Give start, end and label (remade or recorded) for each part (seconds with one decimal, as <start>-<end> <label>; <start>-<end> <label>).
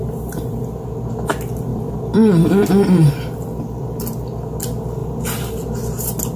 0.0-0.6 remade; 0.6-1.7 recorded; 1.7-4.0 remade; 4.0-5.0 recorded; 5.0-5.5 remade; 5.5-6.4 recorded